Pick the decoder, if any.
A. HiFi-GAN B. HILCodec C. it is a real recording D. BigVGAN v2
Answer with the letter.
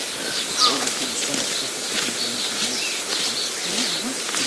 D